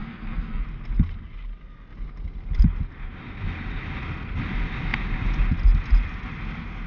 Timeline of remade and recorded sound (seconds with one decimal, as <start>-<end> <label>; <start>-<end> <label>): 0.0-0.6 remade; 0.6-6.9 recorded